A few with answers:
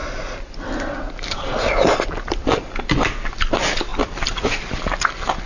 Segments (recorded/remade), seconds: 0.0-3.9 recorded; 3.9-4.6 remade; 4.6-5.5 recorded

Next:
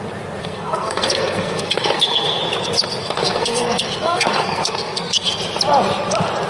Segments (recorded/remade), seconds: 0.0-0.4 recorded; 0.4-2.4 remade; 2.4-3.0 recorded; 3.0-5.4 remade; 5.4-6.5 recorded

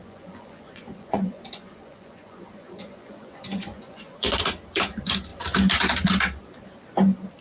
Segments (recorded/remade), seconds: 0.0-4.4 remade; 4.4-7.4 recorded

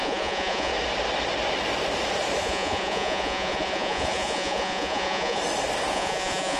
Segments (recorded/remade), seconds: 0.0-0.7 remade; 0.7-2.4 recorded; 2.4-5.4 remade; 5.4-5.9 recorded; 5.9-6.6 remade

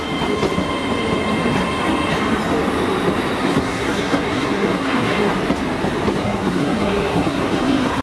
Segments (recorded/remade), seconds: 0.0-3.4 recorded; 3.4-5.3 remade; 5.3-6.2 recorded; 6.2-8.0 remade

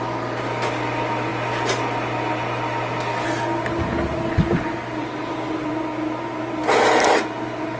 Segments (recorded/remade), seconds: 0.0-5.0 recorded; 5.0-5.8 remade; 5.8-7.8 recorded

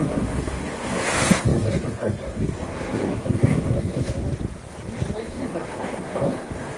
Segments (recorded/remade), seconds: 0.0-4.2 remade; 4.2-5.2 recorded; 5.2-6.8 remade

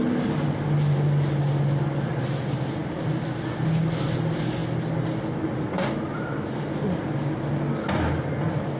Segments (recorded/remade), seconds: 0.0-8.8 recorded